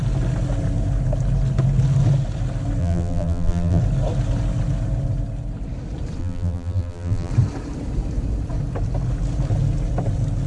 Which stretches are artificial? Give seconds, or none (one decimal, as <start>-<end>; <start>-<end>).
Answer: 2.8-3.8; 6.2-7.3